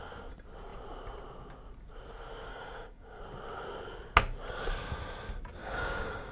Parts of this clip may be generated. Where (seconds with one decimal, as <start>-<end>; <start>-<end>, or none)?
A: 2.5-3.2; 5.6-6.3